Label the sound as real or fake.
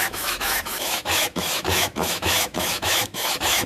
fake